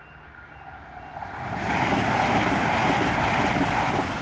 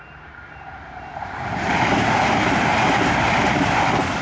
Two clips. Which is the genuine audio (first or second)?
first